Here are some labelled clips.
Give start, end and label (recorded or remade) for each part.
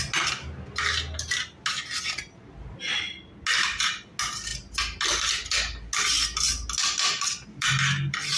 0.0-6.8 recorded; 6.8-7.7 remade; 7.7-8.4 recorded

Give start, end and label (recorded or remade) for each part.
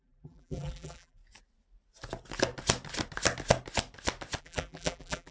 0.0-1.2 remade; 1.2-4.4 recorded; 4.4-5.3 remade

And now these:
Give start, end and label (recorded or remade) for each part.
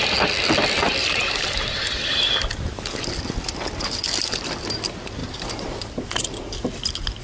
0.0-1.0 recorded; 1.0-1.8 remade; 1.8-5.2 recorded; 5.2-6.1 remade; 6.1-7.2 recorded